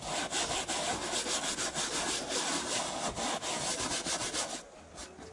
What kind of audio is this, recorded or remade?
recorded